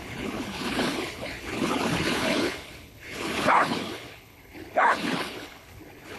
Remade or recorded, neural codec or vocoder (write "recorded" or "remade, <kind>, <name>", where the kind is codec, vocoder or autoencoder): remade, codec, HILCodec